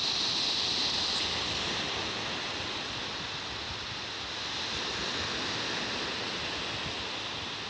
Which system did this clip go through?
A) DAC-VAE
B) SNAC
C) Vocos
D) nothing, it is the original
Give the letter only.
D